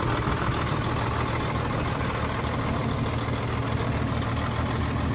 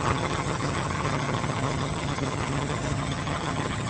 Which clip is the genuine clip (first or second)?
first